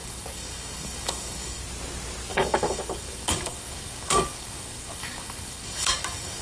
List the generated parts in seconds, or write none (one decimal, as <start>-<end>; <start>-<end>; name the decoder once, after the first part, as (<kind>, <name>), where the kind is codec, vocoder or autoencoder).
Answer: 0.0-1.6 (codec, DAC); 2.3-6.4